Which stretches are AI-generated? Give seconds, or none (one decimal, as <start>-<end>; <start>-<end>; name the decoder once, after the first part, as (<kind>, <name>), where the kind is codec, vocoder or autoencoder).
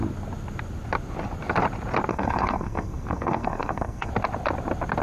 2.1-4.1 (codec, SNAC)